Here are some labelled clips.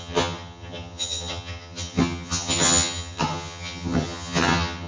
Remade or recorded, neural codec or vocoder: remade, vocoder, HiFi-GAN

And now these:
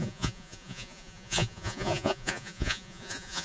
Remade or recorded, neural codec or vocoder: remade, vocoder, Vocos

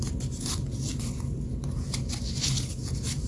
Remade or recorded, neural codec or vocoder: recorded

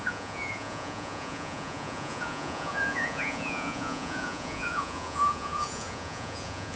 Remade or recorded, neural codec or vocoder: remade, vocoder, Vocos